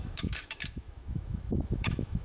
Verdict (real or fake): fake